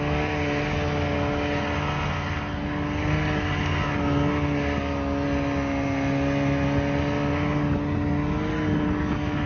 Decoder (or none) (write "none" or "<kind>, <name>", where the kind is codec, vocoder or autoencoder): none